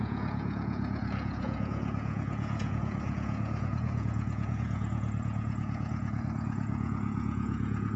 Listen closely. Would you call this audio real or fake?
fake